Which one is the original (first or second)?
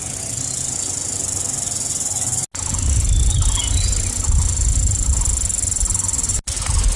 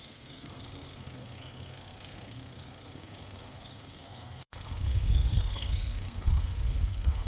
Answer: first